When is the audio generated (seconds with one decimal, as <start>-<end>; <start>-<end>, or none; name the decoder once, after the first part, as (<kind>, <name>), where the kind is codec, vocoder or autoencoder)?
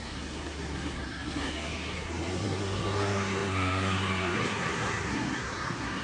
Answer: 0.0-6.0 (codec, SNAC)